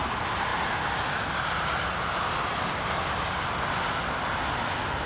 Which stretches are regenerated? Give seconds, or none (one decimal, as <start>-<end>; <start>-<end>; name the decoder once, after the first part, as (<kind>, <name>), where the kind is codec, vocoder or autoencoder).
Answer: none